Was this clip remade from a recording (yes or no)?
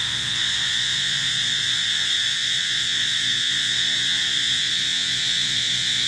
yes